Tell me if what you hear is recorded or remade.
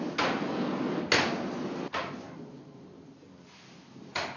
recorded